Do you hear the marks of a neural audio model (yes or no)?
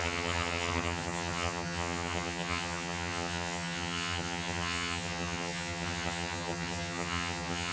yes